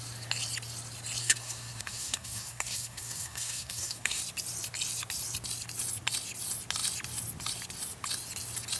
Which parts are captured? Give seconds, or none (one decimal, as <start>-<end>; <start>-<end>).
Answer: 0.0-1.2; 4.2-8.8